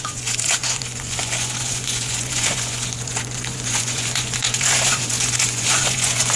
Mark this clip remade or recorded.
remade